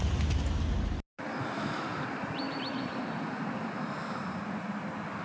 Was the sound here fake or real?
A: real